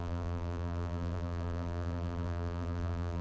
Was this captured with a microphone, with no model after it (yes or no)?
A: no